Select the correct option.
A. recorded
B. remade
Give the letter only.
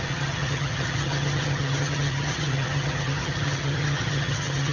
B